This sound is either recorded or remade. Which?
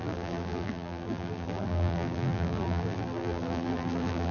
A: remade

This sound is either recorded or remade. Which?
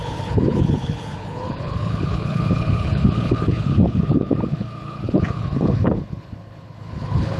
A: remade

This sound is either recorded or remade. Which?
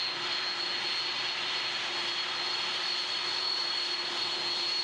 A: recorded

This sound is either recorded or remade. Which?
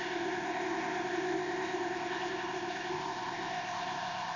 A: remade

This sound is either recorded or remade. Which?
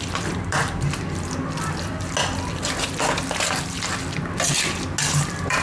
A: recorded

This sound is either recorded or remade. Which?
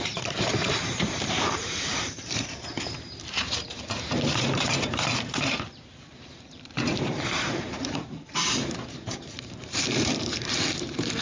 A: remade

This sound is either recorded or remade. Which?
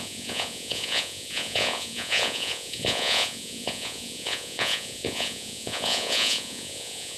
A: remade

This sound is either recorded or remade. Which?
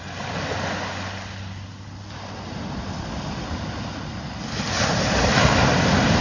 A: recorded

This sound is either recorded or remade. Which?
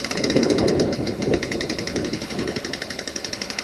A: remade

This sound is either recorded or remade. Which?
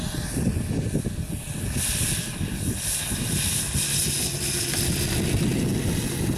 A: recorded